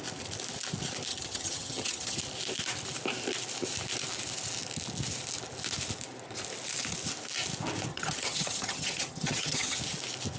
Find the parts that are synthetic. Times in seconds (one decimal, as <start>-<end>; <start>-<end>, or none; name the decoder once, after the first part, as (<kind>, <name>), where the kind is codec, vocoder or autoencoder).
1.1-2.2 (vocoder, HiFi-GAN); 7.9-9.8